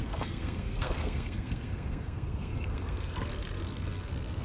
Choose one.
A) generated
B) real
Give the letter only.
A